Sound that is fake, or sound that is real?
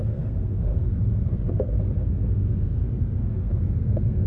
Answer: fake